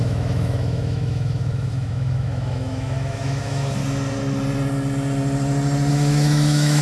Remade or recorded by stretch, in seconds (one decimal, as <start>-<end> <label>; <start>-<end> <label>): 0.0-3.8 remade; 3.8-5.9 recorded; 5.9-6.8 remade